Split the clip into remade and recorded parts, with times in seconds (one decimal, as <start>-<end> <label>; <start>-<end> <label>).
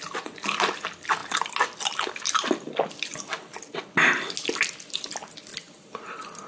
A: 0.0-6.5 recorded